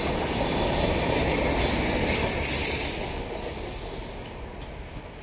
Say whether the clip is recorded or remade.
recorded